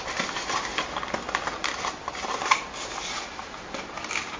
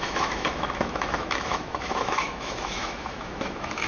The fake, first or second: second